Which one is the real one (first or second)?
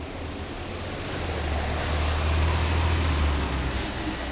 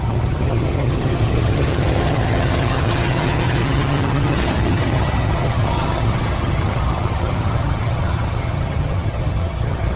first